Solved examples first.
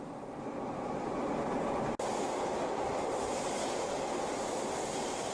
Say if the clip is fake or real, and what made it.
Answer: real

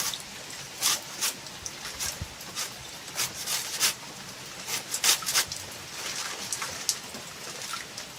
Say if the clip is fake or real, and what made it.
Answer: real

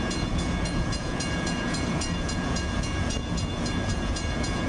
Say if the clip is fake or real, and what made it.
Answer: fake, vocoder, Vocos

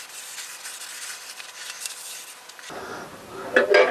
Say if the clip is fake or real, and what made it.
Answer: real